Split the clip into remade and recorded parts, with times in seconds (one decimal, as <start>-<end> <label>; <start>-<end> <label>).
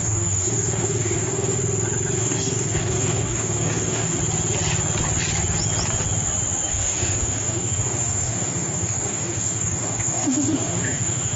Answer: 0.0-1.6 remade; 1.6-2.2 recorded; 2.2-4.2 remade; 4.2-6.7 recorded; 6.7-11.4 remade